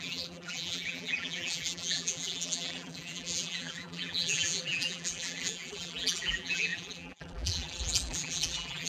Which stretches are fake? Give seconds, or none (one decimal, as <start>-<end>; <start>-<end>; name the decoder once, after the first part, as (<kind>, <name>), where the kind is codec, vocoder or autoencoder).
0.0-8.9 (vocoder, BigVGAN v2)